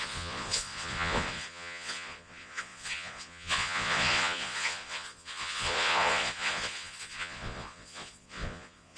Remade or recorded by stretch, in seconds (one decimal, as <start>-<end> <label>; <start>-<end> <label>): 0.0-9.0 remade